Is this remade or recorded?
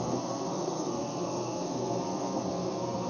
remade